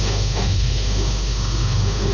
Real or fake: fake